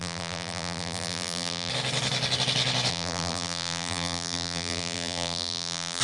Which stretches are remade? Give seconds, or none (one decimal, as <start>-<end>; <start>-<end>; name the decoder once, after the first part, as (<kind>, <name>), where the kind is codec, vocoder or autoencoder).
0.0-1.7 (vocoder, BigVGAN v2); 2.9-6.0